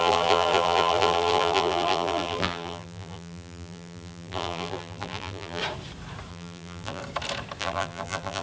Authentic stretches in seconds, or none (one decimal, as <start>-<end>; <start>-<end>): 5.6-6.3; 7.0-7.6

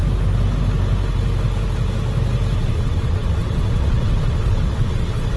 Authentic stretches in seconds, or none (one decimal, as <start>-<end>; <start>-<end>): 0.0-2.6

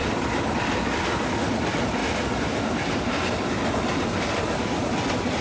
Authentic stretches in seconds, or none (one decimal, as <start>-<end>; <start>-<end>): 0.0-5.4

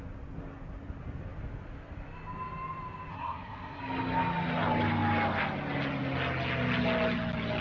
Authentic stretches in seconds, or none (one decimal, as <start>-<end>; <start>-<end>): 0.0-3.1; 3.8-7.6

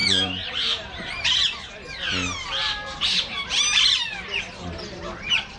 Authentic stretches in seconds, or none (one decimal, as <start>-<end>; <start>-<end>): 1.7-2.6; 4.0-5.6

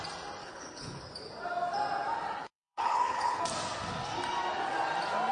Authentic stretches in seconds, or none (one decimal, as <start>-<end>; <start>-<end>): 0.0-0.4; 1.0-2.4; 3.4-5.3

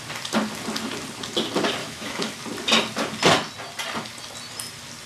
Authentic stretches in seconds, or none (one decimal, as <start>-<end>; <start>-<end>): 0.0-1.8; 2.3-5.1